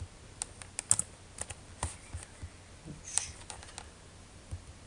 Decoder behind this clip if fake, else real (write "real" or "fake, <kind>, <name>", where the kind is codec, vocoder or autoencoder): real